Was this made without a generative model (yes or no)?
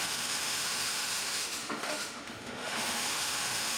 no